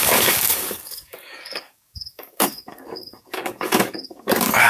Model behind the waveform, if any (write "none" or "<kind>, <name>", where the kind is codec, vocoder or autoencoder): codec, DAC